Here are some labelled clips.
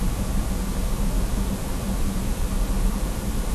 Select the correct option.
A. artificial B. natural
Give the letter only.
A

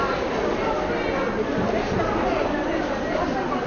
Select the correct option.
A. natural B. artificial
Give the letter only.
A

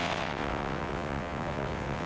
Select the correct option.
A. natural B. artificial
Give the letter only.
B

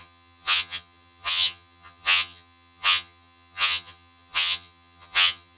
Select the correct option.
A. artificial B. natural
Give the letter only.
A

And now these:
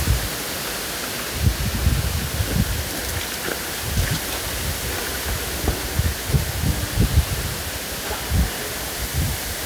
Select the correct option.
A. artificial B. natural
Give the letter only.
B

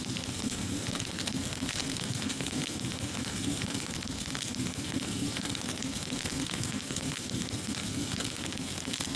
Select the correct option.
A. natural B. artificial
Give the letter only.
B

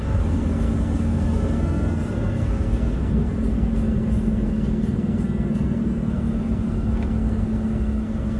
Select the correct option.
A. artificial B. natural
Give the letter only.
A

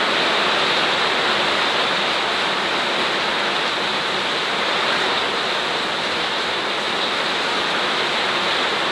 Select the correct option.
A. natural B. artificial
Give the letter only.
A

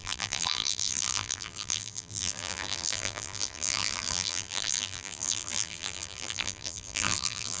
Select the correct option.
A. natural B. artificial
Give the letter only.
B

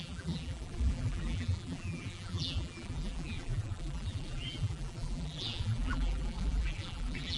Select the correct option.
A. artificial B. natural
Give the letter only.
A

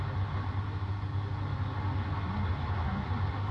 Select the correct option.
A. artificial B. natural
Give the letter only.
B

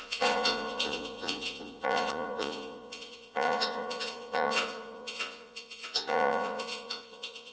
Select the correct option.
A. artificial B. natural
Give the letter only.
A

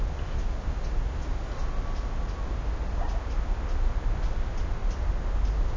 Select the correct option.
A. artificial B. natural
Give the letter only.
B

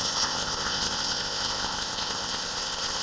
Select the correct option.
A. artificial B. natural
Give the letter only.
A